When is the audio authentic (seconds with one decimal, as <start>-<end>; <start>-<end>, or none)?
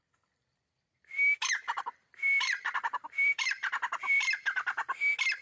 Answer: 0.0-1.4; 3.7-5.4